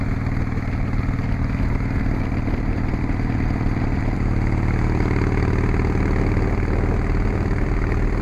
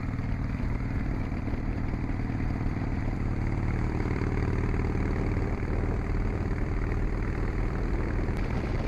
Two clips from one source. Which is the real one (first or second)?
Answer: first